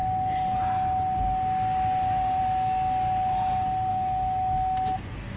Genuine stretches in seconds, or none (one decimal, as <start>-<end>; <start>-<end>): 0.0-3.9; 5.0-5.4

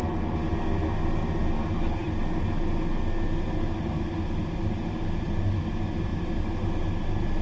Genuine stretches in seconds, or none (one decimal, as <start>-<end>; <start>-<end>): 0.0-7.4

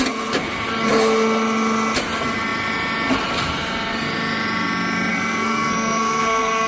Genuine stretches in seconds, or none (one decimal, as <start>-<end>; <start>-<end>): 0.0-5.1

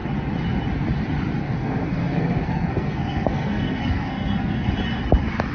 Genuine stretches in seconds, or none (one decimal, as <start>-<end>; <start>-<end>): 0.0-1.4; 4.7-5.5

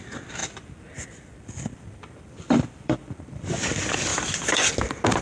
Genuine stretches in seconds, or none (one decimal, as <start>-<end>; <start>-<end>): 0.0-0.4; 3.5-4.1; 4.7-5.2

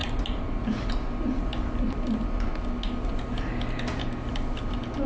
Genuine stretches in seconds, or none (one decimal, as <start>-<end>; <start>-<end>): 0.9-5.1

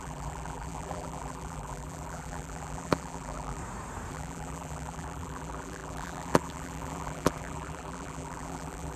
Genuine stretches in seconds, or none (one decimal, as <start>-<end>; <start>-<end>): 3.6-4.1

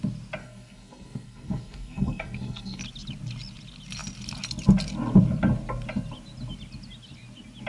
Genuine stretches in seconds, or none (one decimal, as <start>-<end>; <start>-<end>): 0.0-0.4; 2.8-7.7